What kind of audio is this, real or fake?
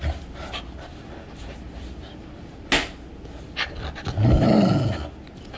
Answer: real